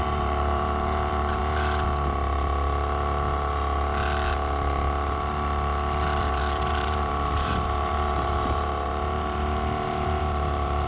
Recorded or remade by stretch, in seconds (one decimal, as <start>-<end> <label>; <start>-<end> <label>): 0.0-1.4 remade; 1.4-6.2 recorded; 6.2-10.9 remade